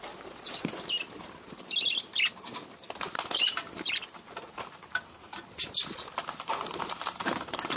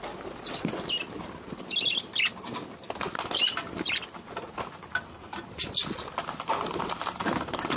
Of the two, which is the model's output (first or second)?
first